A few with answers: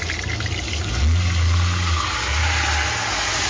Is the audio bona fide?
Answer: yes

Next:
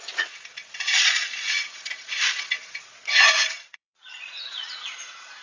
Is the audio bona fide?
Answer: no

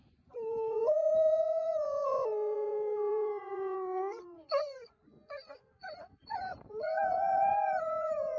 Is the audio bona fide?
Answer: no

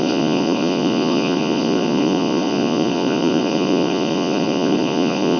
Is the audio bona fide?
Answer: no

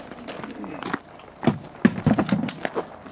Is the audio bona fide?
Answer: yes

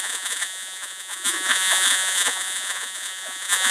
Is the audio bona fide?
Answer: no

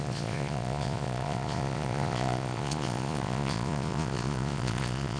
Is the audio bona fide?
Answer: no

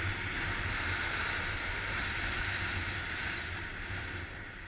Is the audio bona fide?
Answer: yes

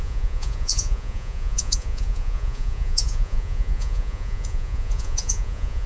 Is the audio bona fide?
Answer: no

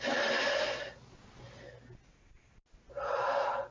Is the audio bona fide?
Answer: yes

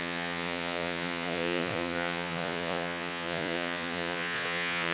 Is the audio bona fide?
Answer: no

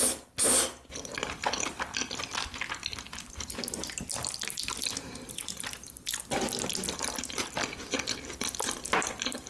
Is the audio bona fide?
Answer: yes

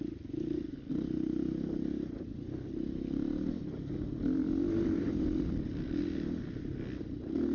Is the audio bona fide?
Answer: yes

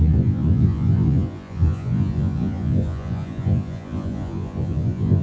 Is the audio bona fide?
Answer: no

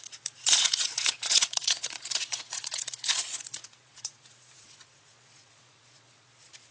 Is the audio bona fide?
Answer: no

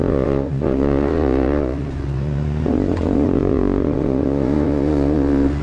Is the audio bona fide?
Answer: no